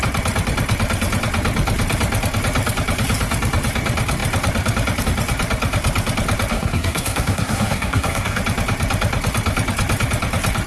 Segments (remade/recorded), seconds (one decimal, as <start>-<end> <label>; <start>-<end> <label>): 0.0-6.5 recorded; 6.5-8.4 remade; 8.4-10.7 recorded